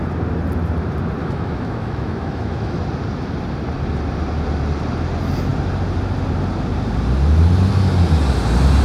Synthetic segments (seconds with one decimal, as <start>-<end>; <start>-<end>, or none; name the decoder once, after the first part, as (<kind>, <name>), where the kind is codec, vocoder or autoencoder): 1.2-2.8 (autoencoder, DAC-VAE)